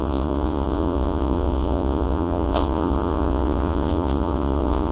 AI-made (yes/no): yes